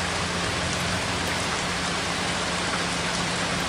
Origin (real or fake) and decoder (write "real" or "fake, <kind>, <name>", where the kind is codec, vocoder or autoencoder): real